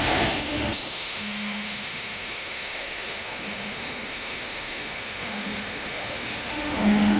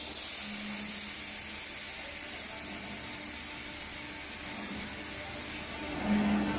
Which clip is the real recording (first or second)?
second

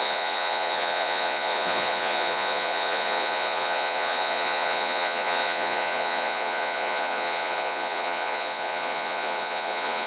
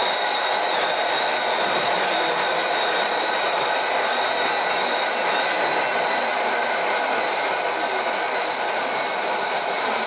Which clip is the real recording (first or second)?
second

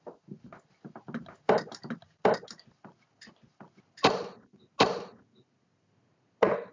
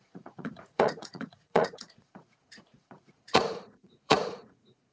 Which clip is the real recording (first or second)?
first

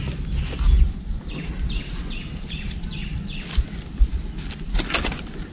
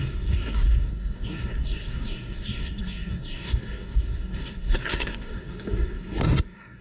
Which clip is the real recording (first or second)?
first